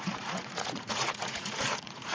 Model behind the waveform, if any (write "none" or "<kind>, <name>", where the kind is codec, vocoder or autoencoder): vocoder, Vocos